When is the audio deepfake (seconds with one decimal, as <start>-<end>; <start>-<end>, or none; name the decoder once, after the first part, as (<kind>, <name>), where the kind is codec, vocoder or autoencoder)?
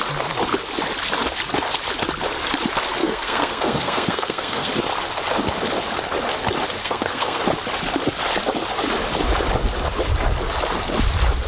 3.0-4.7 (codec, SNAC); 6.8-7.4